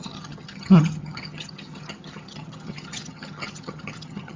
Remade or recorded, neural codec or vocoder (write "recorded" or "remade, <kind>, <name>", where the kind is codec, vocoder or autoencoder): remade, vocoder, HiFi-GAN